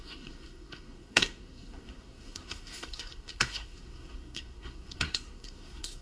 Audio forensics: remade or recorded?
remade